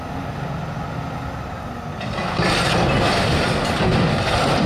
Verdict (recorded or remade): recorded